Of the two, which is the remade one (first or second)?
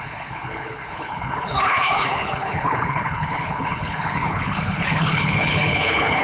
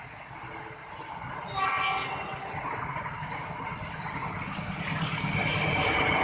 first